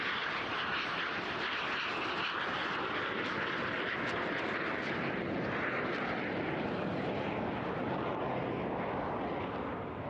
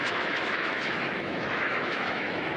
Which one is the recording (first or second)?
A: first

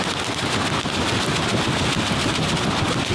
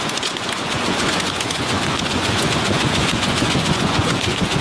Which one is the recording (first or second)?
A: first